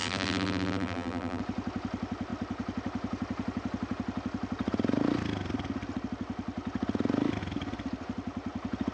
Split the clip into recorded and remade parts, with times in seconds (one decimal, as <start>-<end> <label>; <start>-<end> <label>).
0.0-1.4 remade; 1.4-8.9 recorded